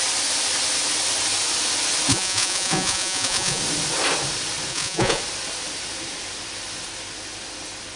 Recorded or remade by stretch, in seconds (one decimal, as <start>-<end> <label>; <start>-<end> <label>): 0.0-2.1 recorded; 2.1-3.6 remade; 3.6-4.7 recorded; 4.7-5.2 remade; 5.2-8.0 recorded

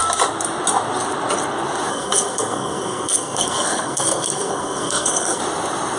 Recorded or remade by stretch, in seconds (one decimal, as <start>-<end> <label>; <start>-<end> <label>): 0.0-1.9 recorded; 1.9-5.4 remade; 5.4-6.0 recorded

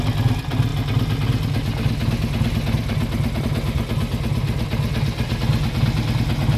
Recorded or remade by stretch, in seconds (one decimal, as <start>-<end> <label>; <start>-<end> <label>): 0.0-6.6 recorded

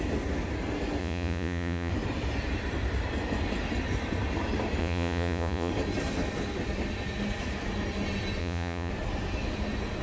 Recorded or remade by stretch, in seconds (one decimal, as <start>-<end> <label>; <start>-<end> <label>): 0.0-1.0 recorded; 1.0-1.9 remade; 1.9-4.8 recorded; 4.8-5.7 remade; 5.7-8.4 recorded; 8.4-8.9 remade; 8.9-10.0 recorded